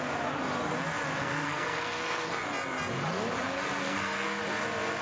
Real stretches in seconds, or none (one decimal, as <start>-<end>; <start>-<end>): 0.0-1.2; 2.4-3.8; 4.4-5.0